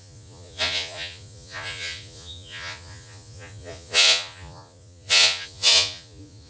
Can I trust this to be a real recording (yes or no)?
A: no